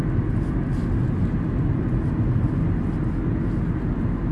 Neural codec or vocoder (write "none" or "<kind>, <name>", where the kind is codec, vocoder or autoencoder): none